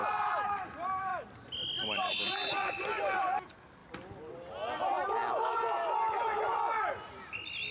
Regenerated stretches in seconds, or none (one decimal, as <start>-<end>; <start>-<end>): none